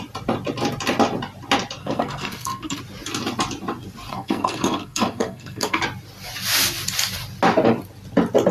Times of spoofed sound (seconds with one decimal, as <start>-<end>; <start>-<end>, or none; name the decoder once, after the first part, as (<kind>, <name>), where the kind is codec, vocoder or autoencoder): 1.8-2.8 (codec, SNAC); 4.1-5.8